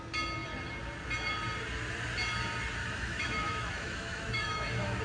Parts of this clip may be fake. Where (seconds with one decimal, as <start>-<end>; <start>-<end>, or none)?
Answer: 2.8-5.0